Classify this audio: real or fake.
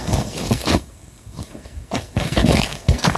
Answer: fake